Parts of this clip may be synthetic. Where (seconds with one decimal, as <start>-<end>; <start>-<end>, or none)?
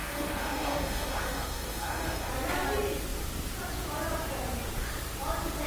0.0-2.3